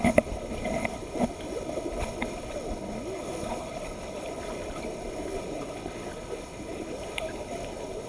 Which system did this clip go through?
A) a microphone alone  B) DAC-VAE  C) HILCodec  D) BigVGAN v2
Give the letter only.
C